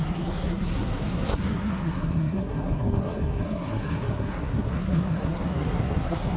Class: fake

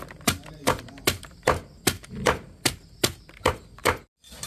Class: real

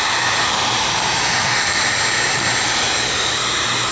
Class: real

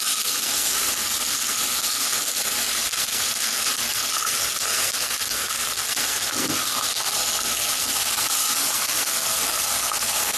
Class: fake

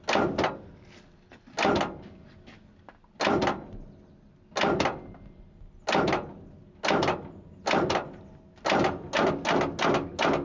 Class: real